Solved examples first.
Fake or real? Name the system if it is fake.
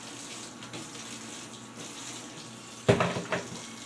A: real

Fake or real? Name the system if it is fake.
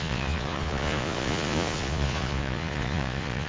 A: fake, vocoder, Vocos